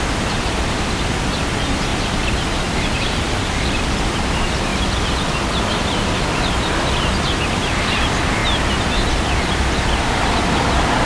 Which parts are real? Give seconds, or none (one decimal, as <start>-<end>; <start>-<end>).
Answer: 8.4-10.4